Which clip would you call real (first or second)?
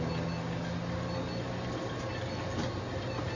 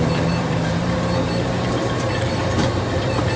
first